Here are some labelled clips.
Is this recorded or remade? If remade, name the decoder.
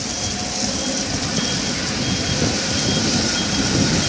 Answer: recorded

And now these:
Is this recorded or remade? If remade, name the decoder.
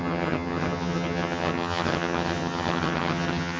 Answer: remade, vocoder, HiFi-GAN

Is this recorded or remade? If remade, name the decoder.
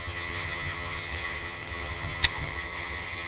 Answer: remade, vocoder, HiFi-GAN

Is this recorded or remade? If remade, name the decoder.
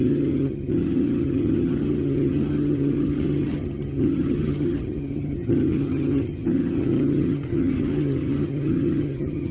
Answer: remade, vocoder, HiFi-GAN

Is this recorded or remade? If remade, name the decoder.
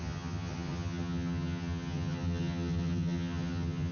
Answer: remade, vocoder, HiFi-GAN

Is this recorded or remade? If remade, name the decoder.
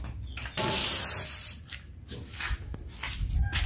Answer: recorded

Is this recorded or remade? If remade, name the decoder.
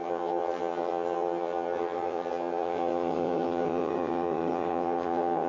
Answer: remade, vocoder, HiFi-GAN